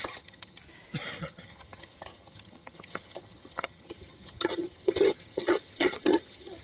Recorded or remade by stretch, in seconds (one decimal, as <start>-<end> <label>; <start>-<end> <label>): 0.0-0.6 remade; 0.6-1.2 recorded; 1.2-6.6 remade

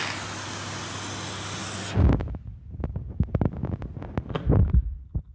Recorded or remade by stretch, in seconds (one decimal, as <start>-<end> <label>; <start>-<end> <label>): 0.0-5.3 recorded

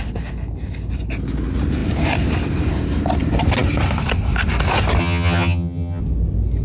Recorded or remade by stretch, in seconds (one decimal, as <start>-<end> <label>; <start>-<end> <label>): 0.0-5.0 recorded; 5.0-6.0 remade; 6.0-6.6 recorded

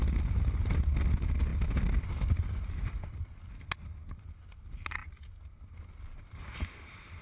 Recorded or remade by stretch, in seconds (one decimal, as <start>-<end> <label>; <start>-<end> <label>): 0.0-7.2 recorded